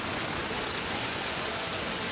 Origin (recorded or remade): remade